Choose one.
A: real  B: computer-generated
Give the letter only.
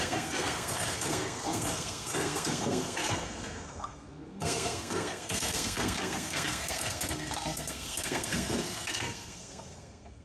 B